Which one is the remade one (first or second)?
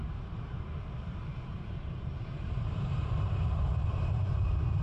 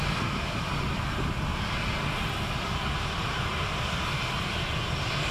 first